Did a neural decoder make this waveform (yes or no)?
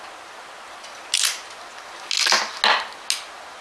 no